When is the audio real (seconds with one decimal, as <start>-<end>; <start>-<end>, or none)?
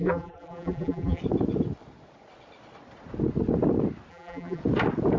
1.2-4.1; 4.6-5.2